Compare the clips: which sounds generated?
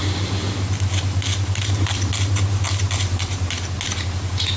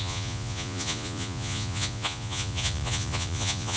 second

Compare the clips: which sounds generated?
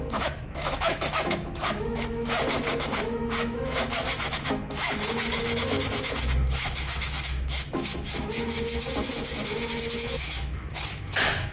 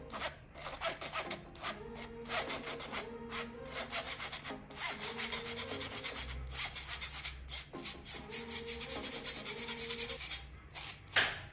first